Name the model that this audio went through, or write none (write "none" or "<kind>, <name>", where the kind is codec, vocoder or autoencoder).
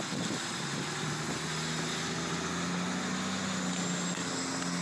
none